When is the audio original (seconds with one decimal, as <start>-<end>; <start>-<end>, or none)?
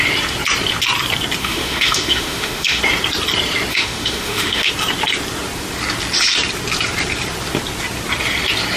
0.0-1.4; 2.8-3.7; 4.7-8.8